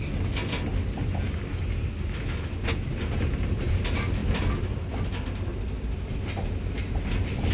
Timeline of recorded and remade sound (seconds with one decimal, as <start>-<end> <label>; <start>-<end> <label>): 0.0-7.5 recorded